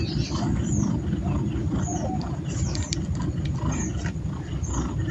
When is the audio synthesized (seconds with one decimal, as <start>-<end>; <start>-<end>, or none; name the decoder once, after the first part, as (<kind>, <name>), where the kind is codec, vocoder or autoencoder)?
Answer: none